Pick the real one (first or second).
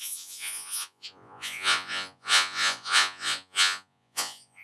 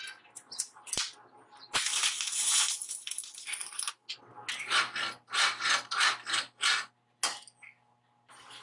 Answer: second